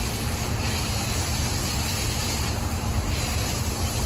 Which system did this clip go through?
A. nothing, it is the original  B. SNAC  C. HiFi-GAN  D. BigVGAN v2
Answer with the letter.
D